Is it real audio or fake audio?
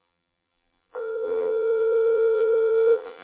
fake